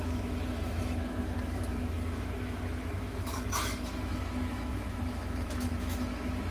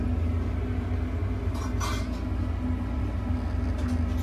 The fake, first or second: first